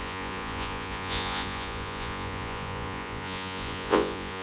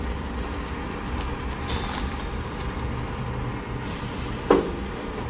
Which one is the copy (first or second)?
first